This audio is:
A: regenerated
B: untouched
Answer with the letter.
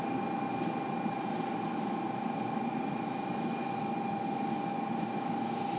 B